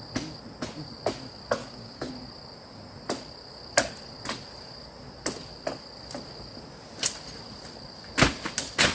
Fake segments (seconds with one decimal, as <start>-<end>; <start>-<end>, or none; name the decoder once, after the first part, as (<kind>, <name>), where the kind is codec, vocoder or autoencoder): 1.6-2.1 (codec, DAC)